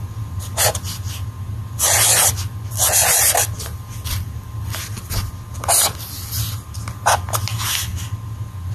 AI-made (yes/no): no